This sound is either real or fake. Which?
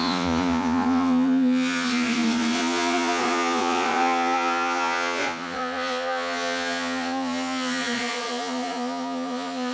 fake